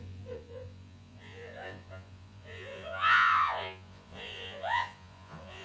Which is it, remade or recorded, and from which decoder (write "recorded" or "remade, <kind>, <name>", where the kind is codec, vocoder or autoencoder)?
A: remade, vocoder, Vocos